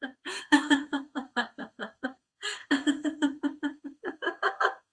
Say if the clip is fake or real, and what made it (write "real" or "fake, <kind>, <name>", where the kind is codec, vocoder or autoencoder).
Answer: fake, codec, SNAC